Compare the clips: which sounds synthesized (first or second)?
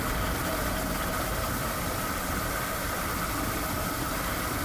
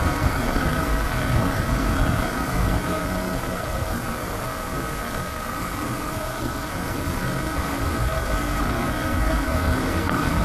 second